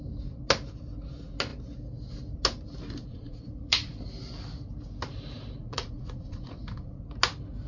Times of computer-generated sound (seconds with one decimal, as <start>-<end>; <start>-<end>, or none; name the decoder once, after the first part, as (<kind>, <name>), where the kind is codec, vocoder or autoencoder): 3.1-3.9 (vocoder, Vocos); 5.6-7.1